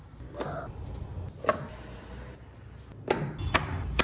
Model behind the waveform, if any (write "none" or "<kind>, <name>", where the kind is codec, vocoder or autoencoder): none